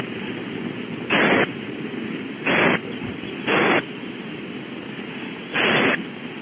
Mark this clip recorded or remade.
recorded